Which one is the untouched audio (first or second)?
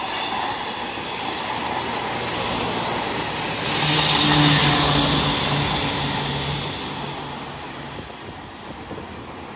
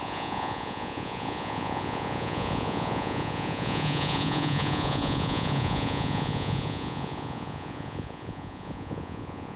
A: first